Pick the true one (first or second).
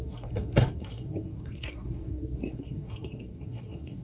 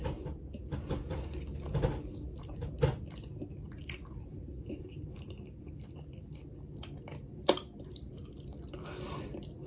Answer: second